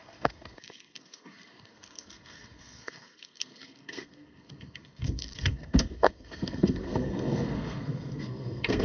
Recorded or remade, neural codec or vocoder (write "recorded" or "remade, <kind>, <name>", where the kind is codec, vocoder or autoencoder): remade, codec, SNAC